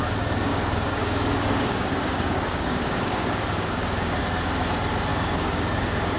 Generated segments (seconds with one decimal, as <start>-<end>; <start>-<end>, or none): 0.5-4.2; 5.1-6.2